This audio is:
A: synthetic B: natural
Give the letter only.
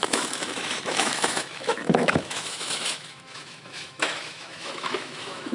A